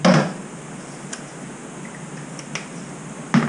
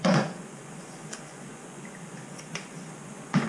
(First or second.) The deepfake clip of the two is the second